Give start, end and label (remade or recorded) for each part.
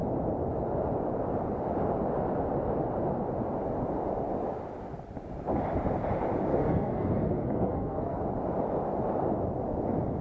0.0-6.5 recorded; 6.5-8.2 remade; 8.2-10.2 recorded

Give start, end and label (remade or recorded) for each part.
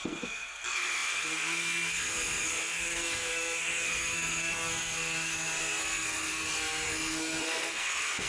0.0-8.3 remade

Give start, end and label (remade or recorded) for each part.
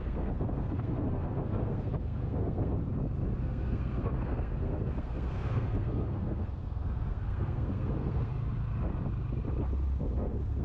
0.0-2.8 remade; 2.8-3.4 recorded; 3.4-8.3 remade; 8.3-10.0 recorded; 10.0-10.6 remade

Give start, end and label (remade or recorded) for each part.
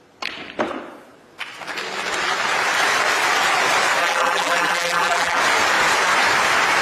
0.0-4.0 recorded; 4.0-5.4 remade; 5.4-6.8 recorded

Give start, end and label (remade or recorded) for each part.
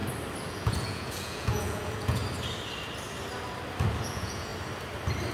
0.0-0.5 recorded; 0.5-2.2 remade; 2.2-4.1 recorded; 4.1-4.5 remade; 4.5-5.3 recorded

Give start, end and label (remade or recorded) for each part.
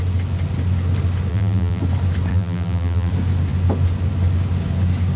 0.0-1.3 recorded; 1.3-1.8 remade; 1.8-2.3 recorded; 2.3-3.1 remade; 3.1-5.2 recorded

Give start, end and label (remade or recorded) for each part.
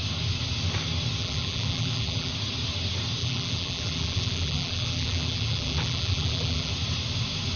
0.0-1.2 recorded; 1.2-2.3 remade; 2.3-3.2 recorded; 3.2-6.7 remade; 6.7-7.6 recorded